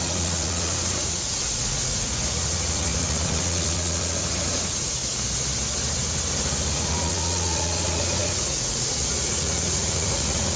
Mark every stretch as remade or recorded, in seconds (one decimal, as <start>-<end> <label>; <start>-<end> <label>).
0.0-5.0 remade; 5.0-6.7 recorded; 6.7-10.6 remade